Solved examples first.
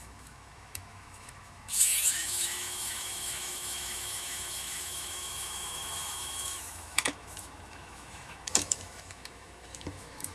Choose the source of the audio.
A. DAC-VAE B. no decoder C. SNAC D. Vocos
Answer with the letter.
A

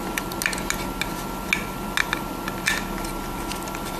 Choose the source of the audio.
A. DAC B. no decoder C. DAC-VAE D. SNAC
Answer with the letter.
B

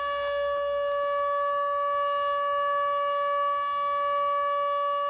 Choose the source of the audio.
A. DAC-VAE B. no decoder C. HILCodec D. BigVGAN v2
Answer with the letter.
B